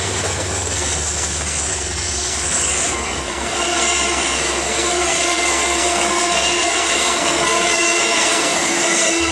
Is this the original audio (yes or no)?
no